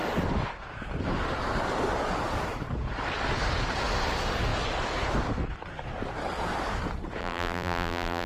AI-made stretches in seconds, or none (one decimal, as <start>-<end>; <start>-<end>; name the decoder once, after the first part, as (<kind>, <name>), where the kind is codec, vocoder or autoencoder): 7.2-8.3 (vocoder, BigVGAN v2)